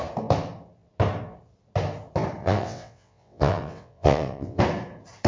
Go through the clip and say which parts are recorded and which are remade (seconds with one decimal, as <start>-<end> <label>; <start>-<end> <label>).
0.0-2.4 recorded; 2.4-4.6 remade; 4.6-5.3 recorded